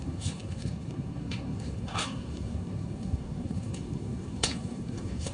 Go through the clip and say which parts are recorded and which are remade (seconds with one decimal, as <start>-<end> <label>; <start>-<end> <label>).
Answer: 0.0-5.3 remade